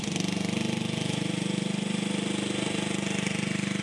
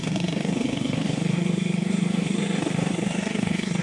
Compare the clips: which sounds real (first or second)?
first